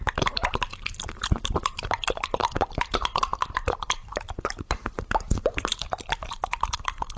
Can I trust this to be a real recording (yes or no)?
no